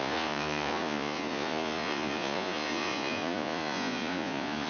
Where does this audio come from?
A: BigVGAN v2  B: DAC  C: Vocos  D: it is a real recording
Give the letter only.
C